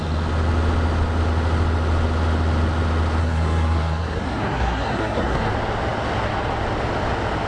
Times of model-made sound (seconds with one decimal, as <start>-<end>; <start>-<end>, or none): 3.2-5.5